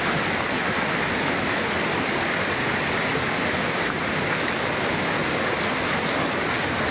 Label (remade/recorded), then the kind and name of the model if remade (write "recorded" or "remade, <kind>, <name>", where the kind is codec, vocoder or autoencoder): recorded